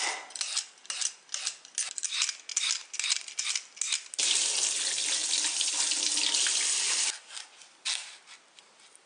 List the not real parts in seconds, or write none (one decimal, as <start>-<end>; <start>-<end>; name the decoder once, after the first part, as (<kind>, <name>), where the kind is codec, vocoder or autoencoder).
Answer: none